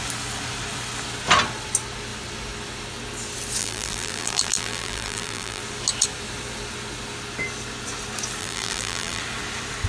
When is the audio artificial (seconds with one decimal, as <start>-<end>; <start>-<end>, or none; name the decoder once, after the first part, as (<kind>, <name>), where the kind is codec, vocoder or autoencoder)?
3.6-5.6 (vocoder, BigVGAN v2); 8.4-9.2